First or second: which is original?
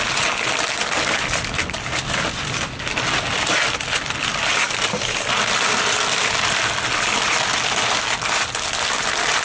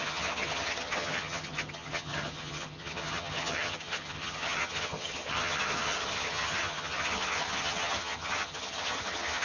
first